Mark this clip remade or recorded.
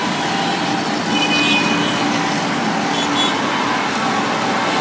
recorded